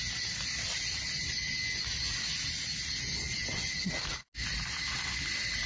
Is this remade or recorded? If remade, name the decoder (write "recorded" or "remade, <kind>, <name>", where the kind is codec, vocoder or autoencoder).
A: recorded